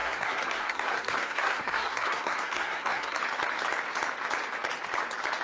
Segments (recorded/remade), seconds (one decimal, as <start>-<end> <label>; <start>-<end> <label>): 0.0-3.2 remade; 3.2-5.4 recorded